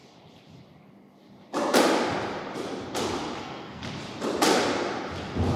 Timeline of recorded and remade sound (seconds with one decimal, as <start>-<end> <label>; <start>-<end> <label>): 0.0-3.4 recorded; 3.4-3.8 remade; 3.8-5.6 recorded